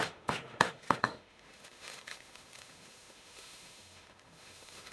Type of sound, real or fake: fake